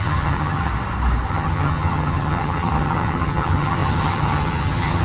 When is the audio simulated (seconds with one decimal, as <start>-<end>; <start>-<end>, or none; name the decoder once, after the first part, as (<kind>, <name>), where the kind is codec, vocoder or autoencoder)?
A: 0.0-0.7 (vocoder, HiFi-GAN); 1.3-5.0